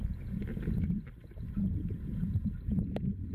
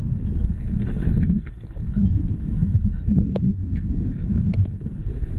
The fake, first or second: second